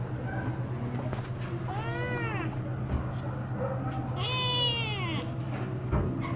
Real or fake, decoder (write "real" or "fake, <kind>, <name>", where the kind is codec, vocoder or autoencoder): real